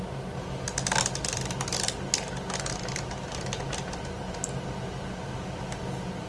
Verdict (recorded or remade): recorded